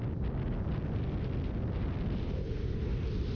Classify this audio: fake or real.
real